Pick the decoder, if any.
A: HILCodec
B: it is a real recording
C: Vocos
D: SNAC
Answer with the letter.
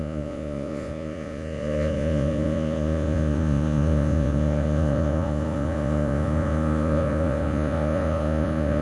C